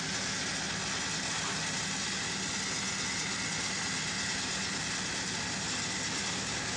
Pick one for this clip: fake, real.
real